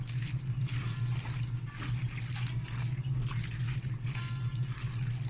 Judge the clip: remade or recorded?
recorded